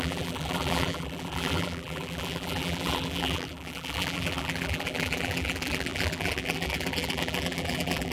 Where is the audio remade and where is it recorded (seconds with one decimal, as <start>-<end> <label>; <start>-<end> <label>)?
0.0-8.1 remade